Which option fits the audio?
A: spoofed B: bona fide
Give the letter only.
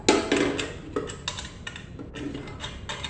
B